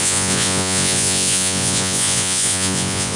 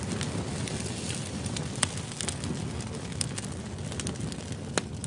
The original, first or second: second